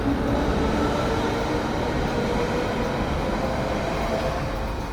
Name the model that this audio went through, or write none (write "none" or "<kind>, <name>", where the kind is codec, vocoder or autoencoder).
none